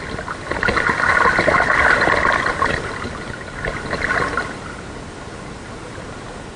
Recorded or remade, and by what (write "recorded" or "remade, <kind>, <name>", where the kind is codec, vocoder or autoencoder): recorded